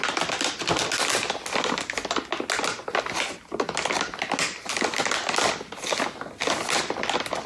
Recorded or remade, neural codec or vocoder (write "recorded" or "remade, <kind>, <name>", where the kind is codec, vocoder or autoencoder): recorded